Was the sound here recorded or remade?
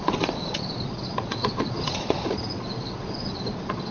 remade